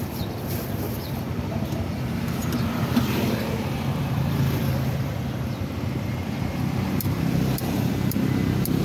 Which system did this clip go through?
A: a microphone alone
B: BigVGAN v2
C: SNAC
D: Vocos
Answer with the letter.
B